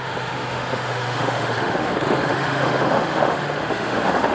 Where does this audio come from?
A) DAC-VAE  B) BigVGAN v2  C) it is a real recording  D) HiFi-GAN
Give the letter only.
A